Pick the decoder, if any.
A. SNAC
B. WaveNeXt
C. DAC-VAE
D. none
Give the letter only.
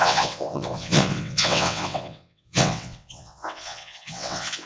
B